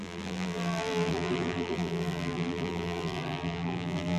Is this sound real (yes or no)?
no